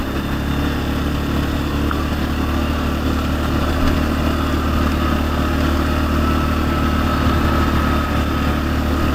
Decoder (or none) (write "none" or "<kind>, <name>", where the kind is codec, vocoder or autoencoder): none